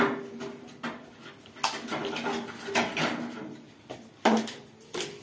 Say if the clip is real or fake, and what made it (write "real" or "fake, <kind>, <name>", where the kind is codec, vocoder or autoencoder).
real